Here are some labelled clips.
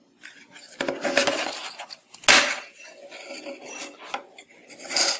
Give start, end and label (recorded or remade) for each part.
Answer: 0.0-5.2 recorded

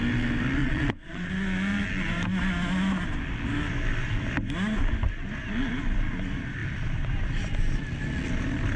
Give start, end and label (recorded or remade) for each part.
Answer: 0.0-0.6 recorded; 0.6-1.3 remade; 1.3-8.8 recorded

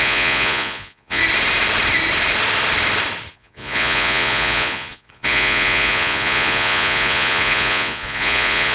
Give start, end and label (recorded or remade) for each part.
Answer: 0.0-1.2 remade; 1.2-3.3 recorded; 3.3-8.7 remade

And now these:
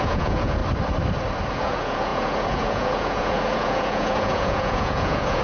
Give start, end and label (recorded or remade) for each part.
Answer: 0.0-0.6 remade; 0.6-1.5 recorded; 1.5-5.4 remade

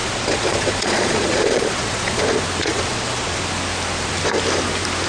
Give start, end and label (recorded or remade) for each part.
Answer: 0.0-2.2 remade; 2.2-2.6 recorded; 2.6-3.4 remade; 3.4-5.1 recorded

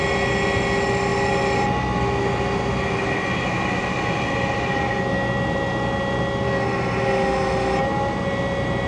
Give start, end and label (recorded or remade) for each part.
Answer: 0.0-8.9 recorded

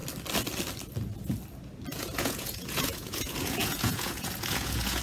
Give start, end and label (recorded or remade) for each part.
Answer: 0.0-1.9 recorded; 1.9-5.0 remade